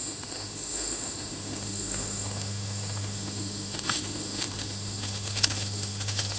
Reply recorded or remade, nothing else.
remade